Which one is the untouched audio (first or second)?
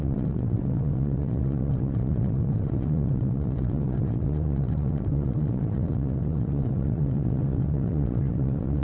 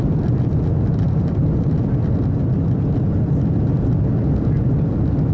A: second